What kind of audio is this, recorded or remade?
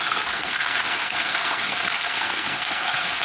remade